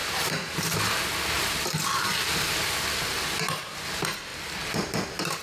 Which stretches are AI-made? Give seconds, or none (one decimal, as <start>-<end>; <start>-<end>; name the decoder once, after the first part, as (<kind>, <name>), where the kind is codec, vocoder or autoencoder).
0.0-3.2 (vocoder, BigVGAN v2); 4.3-5.4